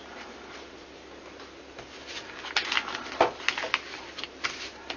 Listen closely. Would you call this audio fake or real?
real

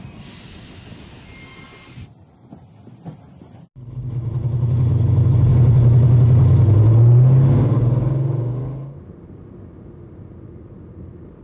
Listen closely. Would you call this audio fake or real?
real